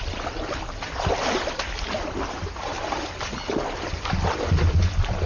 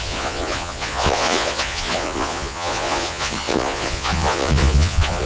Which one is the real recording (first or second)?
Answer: first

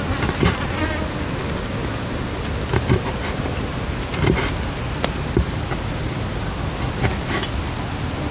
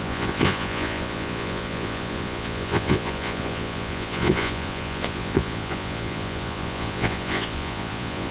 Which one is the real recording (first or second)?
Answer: first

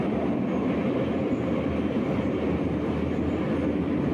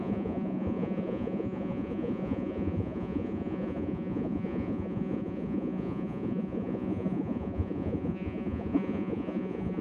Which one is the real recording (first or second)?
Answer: first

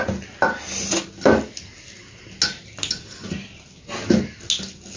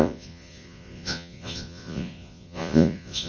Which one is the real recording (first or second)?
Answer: first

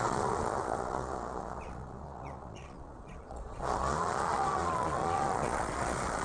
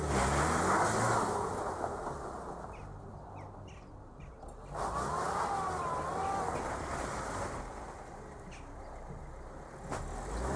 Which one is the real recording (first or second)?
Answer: second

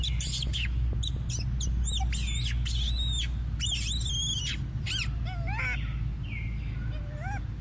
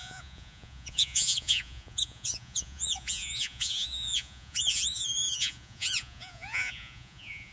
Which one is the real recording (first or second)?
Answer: first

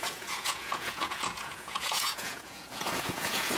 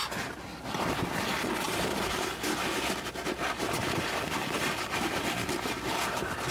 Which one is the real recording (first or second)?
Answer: second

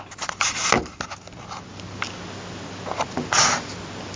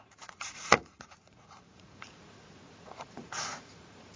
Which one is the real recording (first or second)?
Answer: first